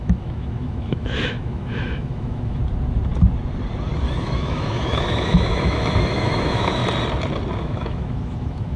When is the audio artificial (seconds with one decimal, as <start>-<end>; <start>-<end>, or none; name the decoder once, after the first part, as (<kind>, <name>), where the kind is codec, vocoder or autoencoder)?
0.0-2.6 (autoencoder, DAC-VAE); 4.2-6.8; 7.6-8.8